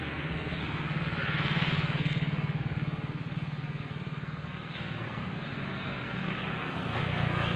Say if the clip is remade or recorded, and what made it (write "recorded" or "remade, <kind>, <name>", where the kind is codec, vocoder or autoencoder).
remade, codec, SNAC